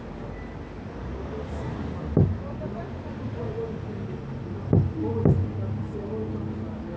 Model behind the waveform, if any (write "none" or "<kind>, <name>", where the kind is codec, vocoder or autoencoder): none